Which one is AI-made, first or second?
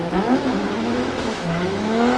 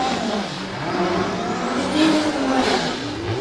first